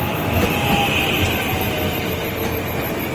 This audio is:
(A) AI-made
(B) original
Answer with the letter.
B